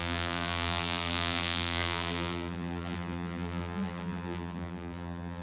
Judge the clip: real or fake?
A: fake